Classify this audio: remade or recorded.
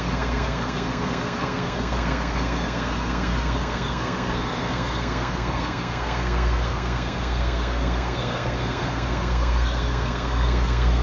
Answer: remade